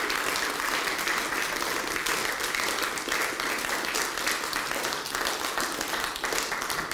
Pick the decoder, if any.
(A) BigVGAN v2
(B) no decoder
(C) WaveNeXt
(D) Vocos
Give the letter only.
B